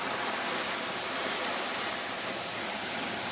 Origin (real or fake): real